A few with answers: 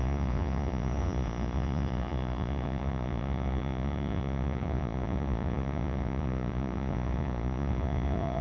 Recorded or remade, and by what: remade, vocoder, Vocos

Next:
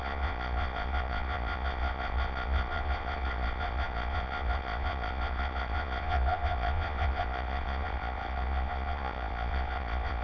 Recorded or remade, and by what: remade, vocoder, Vocos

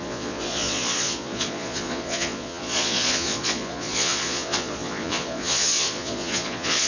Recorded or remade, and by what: remade, vocoder, Vocos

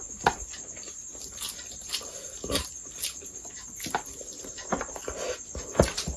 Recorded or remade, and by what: recorded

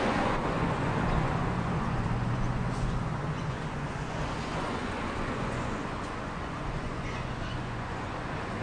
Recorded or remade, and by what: remade, vocoder, Vocos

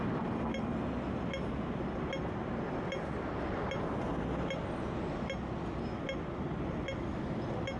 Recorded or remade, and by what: recorded